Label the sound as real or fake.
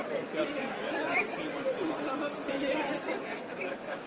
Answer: real